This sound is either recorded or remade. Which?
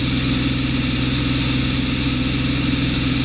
recorded